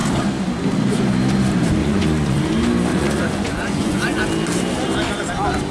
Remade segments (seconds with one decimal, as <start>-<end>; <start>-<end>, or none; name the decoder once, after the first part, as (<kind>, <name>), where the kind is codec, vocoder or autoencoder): 1.8-2.5 (vocoder, Vocos); 2.9-4.2